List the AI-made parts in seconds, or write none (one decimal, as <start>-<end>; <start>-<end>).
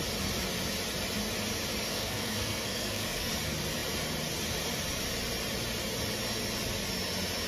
1.9-3.3